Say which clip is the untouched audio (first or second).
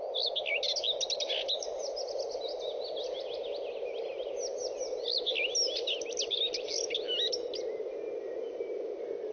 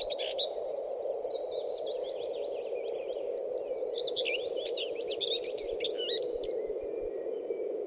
first